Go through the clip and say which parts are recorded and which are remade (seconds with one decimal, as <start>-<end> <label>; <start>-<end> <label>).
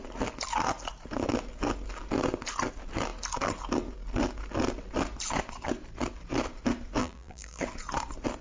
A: 0.0-7.0 recorded; 7.0-7.6 remade; 7.6-8.4 recorded